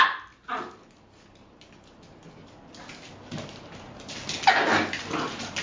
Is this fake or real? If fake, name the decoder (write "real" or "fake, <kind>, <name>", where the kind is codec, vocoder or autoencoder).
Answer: real